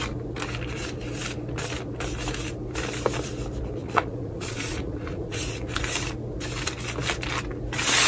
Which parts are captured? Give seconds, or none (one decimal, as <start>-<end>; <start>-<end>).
0.0-3.8; 5.8-8.1